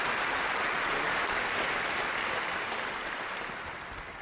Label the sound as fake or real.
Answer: real